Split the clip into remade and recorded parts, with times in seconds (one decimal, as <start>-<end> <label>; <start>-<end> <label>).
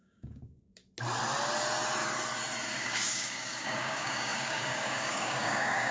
0.0-0.8 remade; 0.8-2.8 recorded; 2.8-5.9 remade